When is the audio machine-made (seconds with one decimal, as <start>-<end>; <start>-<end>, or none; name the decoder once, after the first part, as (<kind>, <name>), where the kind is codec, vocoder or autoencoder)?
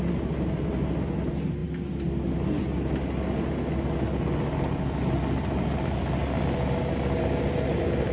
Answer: none